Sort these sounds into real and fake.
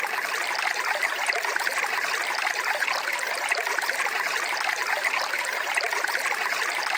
real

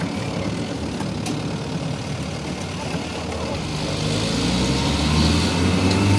real